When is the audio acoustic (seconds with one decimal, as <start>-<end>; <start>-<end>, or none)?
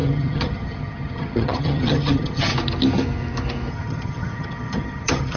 2.5-3.7